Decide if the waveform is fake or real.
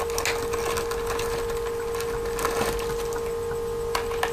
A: real